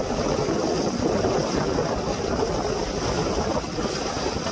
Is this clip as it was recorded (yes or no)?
yes